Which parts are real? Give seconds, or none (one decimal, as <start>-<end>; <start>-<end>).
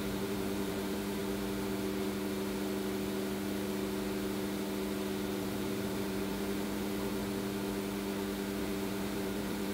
1.2-5.4; 7.2-8.6